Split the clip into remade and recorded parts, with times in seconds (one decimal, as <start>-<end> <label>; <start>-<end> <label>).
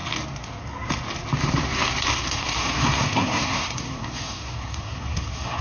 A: 0.0-2.1 recorded; 2.1-5.6 remade